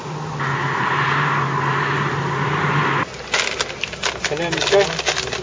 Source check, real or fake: real